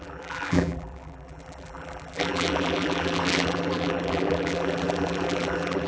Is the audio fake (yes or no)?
yes